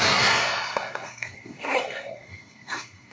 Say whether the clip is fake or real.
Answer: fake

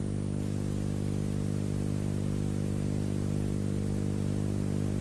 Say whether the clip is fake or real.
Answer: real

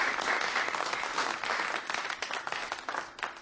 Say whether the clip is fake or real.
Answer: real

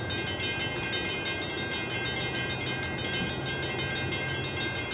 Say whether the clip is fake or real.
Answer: real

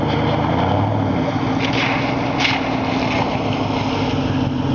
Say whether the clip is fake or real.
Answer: real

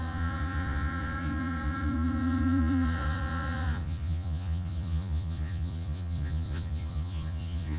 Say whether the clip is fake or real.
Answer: fake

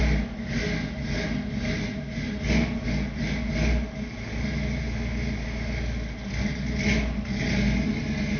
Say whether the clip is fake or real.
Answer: real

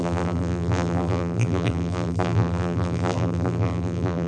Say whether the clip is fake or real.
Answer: fake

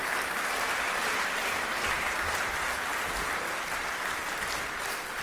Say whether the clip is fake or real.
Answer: real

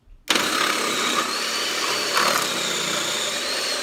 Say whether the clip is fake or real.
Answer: real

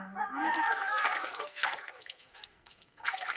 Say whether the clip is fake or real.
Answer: fake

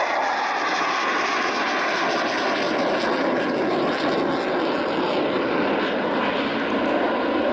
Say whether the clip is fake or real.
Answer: real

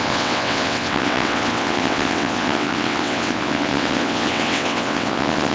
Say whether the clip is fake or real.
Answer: fake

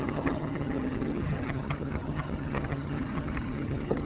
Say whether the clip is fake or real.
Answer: fake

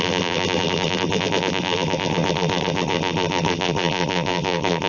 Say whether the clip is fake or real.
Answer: fake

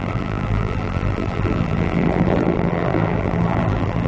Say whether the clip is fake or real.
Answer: fake